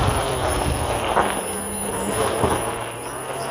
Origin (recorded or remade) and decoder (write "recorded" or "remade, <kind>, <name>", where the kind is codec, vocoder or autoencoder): recorded